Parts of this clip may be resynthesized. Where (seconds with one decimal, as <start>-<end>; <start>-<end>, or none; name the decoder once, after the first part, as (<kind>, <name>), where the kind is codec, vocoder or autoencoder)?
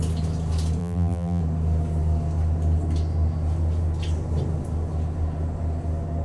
0.8-1.4 (vocoder, BigVGAN v2)